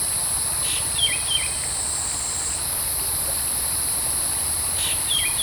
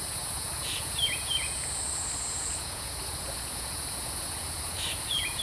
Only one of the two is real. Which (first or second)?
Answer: first